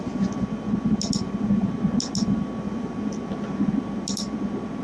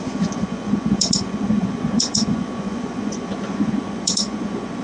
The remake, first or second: second